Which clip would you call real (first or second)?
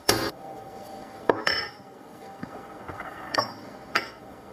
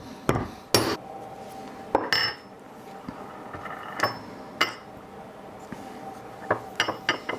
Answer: second